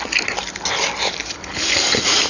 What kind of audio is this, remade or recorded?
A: recorded